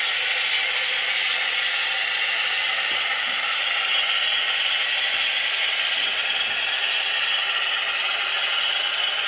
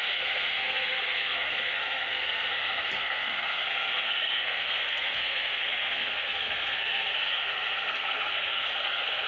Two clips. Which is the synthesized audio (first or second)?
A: second